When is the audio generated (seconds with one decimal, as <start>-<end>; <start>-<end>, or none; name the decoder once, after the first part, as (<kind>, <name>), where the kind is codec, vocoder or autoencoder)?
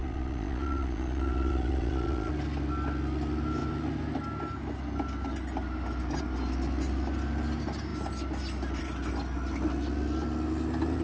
0.0-2.3 (vocoder, Vocos)